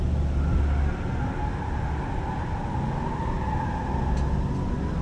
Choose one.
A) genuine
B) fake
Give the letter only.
A